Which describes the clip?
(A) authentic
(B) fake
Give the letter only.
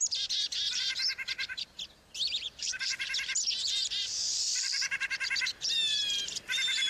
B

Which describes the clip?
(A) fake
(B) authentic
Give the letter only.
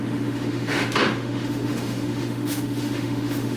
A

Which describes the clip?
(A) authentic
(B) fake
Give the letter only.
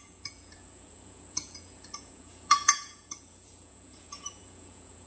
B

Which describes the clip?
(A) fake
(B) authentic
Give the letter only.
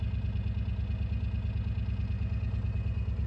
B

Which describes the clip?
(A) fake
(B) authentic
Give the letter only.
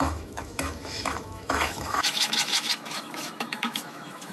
A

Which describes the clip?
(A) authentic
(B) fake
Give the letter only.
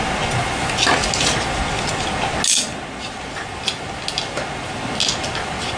A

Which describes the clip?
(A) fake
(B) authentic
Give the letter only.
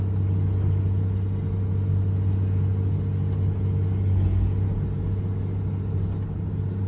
B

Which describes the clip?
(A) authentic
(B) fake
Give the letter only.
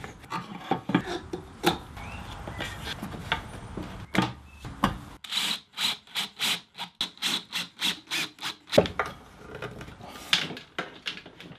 A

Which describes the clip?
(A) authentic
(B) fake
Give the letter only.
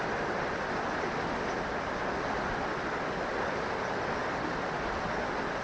A